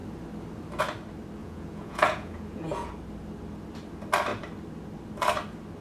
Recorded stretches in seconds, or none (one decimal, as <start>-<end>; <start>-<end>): 0.0-1.4; 2.9-5.8

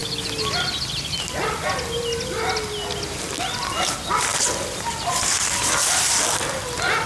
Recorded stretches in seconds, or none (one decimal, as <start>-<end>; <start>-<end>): 0.0-7.1

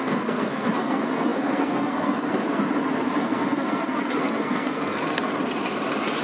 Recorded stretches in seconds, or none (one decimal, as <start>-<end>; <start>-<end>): 2.6-3.2; 5.3-6.2

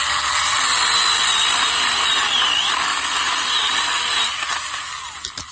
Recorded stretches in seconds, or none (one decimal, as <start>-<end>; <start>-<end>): 0.0-5.5

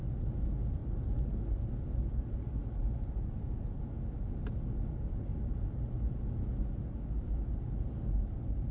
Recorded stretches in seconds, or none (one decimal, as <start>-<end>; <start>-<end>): 0.0-8.7

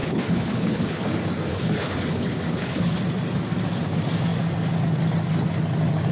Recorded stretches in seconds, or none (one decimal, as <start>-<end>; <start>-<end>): 1.1-1.5; 3.0-6.1

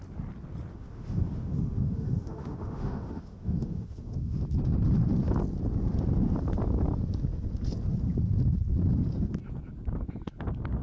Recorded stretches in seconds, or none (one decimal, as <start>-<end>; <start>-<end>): 0.0-0.7; 4.4-10.8